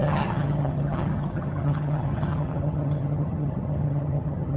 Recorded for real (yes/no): no